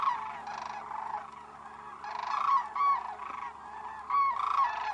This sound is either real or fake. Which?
real